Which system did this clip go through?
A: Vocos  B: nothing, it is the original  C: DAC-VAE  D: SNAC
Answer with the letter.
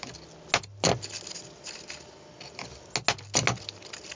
B